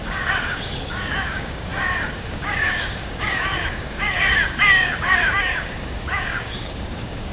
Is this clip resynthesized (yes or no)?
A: yes